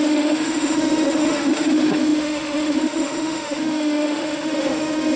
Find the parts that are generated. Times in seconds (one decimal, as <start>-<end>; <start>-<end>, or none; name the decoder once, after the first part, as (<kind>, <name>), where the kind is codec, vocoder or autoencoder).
0.0-5.2 (autoencoder, DAC-VAE)